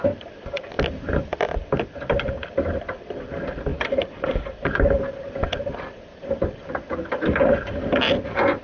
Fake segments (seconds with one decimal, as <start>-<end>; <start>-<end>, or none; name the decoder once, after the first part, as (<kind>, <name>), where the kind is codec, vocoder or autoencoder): 3.7-5.0 (vocoder, BigVGAN v2); 6.1-6.6